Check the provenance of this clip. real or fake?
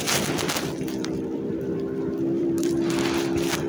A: fake